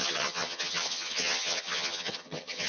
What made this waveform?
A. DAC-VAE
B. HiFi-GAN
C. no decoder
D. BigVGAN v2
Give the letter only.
B